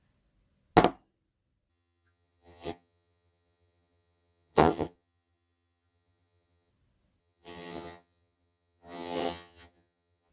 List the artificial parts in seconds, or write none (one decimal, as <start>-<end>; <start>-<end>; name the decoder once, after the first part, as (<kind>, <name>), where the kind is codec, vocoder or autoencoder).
1.7-6.7 (vocoder, HiFi-GAN); 7.2-10.3